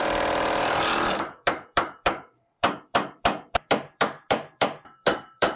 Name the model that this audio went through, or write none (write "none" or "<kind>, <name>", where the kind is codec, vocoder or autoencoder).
vocoder, BigVGAN v2